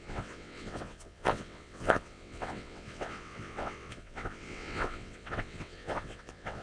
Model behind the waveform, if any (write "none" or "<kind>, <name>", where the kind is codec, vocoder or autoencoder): vocoder, WaveNeXt